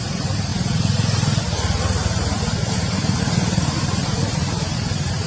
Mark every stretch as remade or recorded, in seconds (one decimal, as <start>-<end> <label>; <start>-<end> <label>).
0.0-5.3 remade